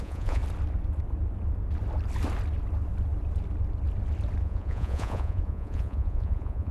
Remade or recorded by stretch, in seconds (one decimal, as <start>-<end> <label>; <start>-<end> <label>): 0.0-0.4 remade; 0.4-4.4 recorded; 4.4-6.7 remade